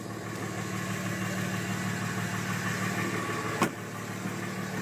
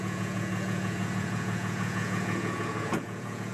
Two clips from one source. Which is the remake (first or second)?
second